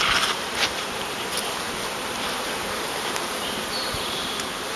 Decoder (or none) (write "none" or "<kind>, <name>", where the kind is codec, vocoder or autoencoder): vocoder, BigVGAN v2